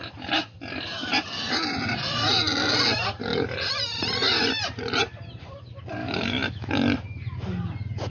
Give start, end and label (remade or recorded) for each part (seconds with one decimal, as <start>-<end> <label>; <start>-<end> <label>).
0.0-6.0 recorded; 6.0-6.7 remade; 6.7-8.1 recorded